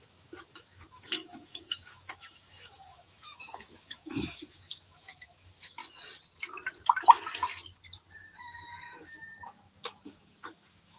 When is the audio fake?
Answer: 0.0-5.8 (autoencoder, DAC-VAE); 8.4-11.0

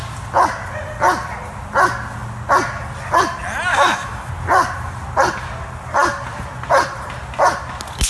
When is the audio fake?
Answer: 3.7-4.3 (autoencoder, DAC-VAE)

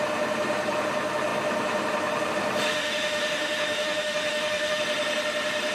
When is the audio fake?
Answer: 2.7-4.8 (autoencoder, DAC-VAE)

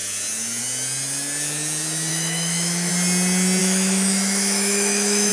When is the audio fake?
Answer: 2.1-2.9 (autoencoder, DAC-VAE); 3.6-5.3